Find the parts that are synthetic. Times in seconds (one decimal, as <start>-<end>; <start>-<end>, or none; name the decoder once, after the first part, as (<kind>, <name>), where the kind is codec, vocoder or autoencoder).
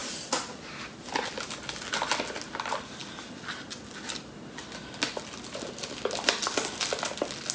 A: 0.0-0.6 (vocoder, Vocos)